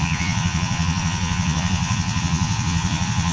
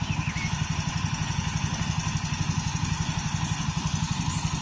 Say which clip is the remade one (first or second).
first